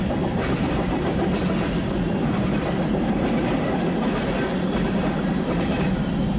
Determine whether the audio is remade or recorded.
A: recorded